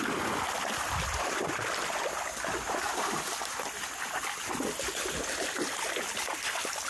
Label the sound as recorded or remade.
recorded